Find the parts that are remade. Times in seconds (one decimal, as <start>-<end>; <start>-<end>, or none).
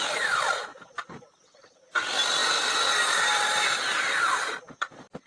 0.7-1.4; 2.4-5.3